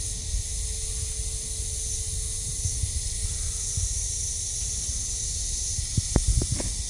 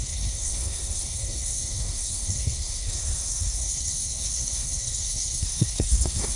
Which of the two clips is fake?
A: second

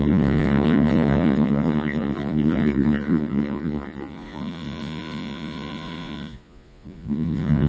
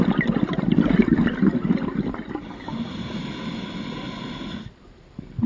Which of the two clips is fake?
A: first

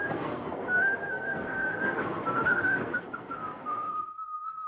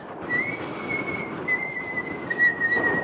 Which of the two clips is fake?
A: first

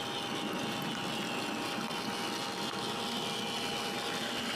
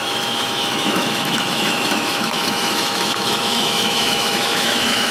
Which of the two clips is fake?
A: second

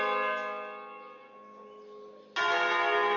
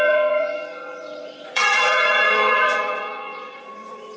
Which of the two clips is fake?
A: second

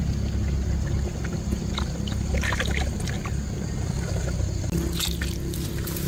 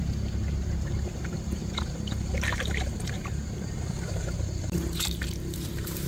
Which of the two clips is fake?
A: second